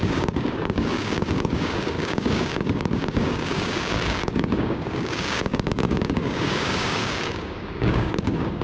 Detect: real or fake fake